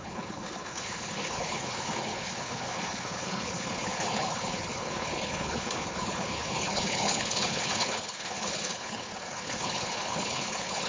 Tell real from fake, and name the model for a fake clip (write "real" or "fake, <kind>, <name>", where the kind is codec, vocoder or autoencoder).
fake, codec, HILCodec